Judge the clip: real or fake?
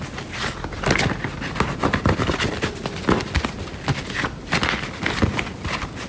real